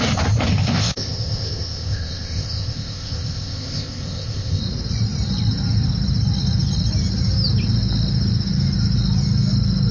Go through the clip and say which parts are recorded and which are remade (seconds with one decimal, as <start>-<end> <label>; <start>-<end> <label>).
0.0-0.5 recorded; 0.5-4.6 remade; 4.6-9.9 recorded